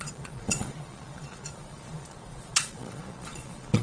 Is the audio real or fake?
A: fake